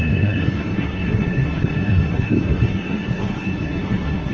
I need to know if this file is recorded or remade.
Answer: remade